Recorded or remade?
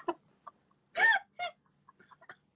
recorded